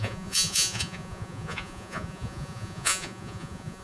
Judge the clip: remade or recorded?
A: remade